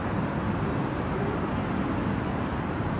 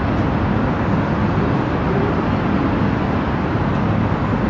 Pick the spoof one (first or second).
first